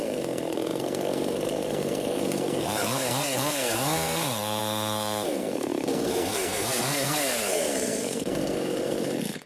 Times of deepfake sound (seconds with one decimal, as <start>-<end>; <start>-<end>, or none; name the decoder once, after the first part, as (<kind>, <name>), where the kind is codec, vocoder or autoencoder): 0.0-9.5 (codec, SNAC)